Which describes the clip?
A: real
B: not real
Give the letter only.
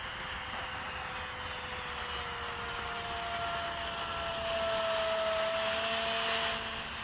A